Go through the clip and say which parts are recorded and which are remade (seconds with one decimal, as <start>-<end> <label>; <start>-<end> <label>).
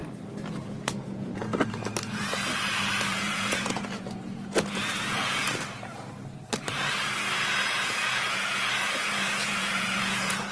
0.0-0.6 recorded; 0.6-1.5 remade; 1.5-3.1 recorded; 3.1-5.4 remade; 5.4-7.6 recorded; 7.6-10.5 remade